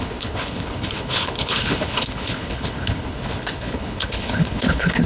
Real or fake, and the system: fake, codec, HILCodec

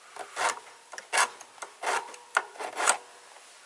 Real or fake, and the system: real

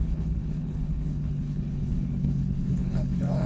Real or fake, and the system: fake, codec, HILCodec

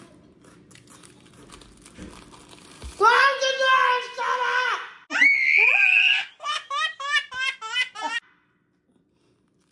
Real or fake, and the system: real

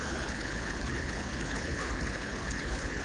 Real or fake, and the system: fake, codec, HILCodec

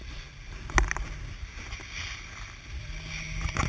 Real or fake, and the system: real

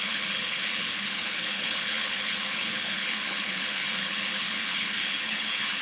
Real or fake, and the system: fake, codec, HILCodec